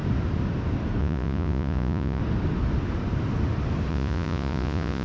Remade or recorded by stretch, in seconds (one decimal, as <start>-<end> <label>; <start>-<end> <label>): 0.0-1.0 recorded; 1.0-2.2 remade; 2.2-3.9 recorded; 3.9-5.0 remade